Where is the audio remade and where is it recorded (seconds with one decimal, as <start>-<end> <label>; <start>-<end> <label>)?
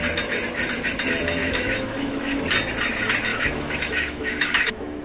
0.0-1.4 recorded; 1.4-2.4 remade; 2.4-3.3 recorded; 3.3-5.0 remade